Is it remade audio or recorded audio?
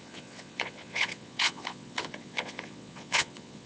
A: remade